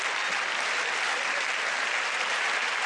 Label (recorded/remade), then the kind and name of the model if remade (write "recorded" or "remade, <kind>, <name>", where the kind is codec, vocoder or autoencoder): recorded